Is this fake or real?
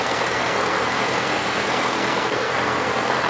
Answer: fake